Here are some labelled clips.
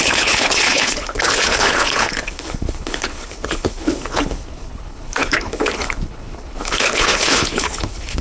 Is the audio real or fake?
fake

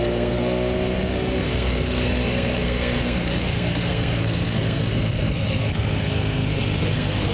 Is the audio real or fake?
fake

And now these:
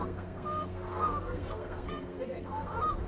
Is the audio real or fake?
fake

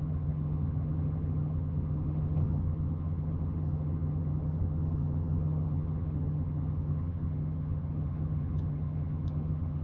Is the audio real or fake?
fake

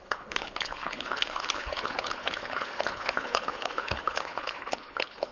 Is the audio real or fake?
fake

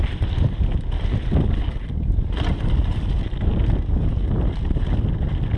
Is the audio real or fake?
real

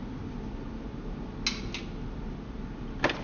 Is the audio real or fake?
real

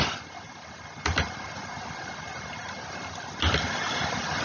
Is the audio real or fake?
real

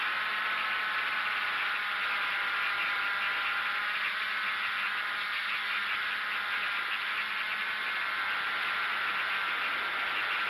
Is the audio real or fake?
real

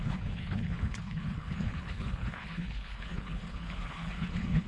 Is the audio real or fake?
fake